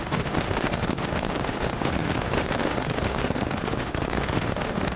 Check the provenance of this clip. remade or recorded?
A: remade